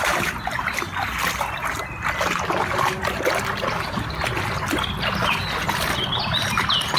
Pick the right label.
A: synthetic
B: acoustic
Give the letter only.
B